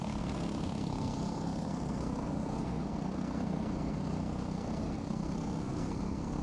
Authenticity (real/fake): fake